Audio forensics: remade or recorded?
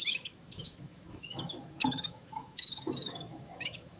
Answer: remade